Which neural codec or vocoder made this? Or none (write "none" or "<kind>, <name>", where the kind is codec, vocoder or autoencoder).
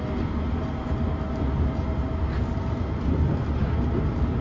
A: none